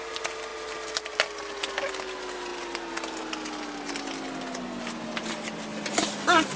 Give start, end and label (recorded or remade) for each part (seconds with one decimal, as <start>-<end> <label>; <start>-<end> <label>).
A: 0.0-5.7 recorded; 5.7-6.6 remade